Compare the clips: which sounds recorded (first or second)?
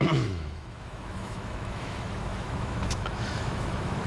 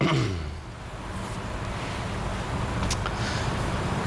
second